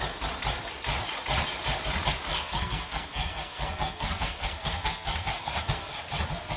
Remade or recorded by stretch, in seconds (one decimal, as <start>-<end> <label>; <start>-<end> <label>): 0.0-2.3 recorded; 2.3-6.0 remade; 6.0-6.6 recorded